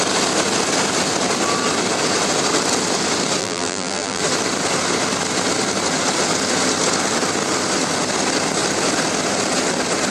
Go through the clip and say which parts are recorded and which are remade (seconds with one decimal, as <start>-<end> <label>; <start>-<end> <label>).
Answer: 0.0-3.4 recorded; 3.4-4.2 remade; 4.2-10.1 recorded